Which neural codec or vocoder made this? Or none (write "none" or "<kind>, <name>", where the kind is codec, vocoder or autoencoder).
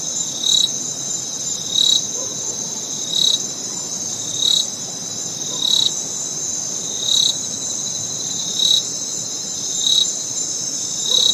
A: none